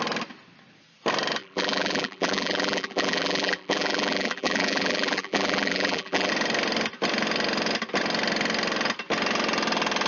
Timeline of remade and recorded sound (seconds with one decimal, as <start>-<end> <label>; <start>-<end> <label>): 0.0-1.4 recorded; 1.4-6.3 remade; 6.3-10.1 recorded